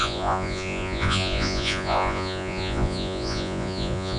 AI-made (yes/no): yes